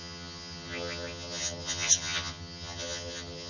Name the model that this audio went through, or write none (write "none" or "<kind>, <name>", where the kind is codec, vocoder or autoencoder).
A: vocoder, HiFi-GAN